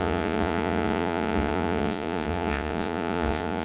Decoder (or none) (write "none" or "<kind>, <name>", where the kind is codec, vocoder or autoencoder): vocoder, Vocos